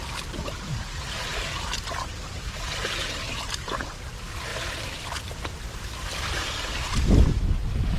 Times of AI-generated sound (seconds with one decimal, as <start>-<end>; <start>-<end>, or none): 6.1-6.9